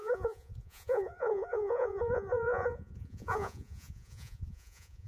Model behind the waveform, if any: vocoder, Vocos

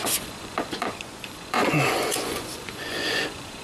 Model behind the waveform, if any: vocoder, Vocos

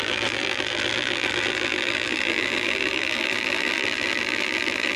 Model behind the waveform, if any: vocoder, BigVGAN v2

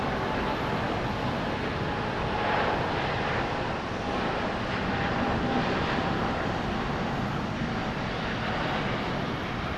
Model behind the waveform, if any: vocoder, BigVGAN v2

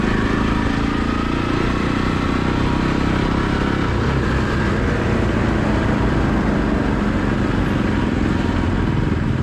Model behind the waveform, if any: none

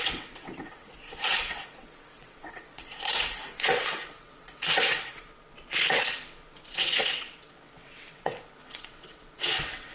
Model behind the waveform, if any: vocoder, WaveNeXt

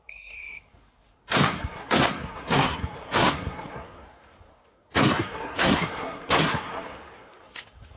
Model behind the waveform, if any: codec, SNAC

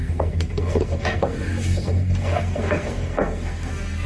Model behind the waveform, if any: codec, SNAC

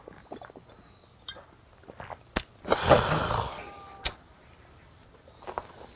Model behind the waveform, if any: none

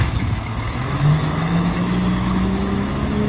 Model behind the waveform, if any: autoencoder, DAC-VAE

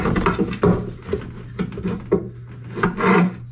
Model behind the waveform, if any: none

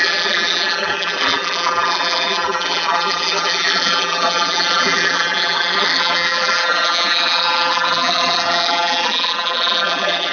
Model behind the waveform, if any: vocoder, BigVGAN v2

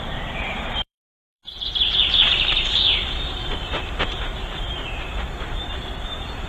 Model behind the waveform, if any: vocoder, BigVGAN v2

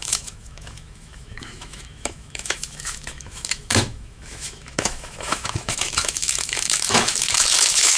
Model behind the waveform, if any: autoencoder, DAC-VAE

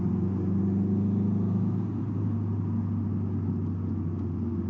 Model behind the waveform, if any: none